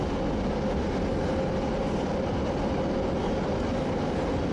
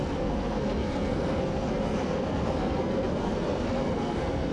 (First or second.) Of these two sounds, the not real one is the second